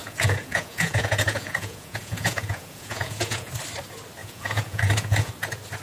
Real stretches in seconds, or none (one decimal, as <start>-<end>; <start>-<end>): 3.5-4.2; 5.3-5.8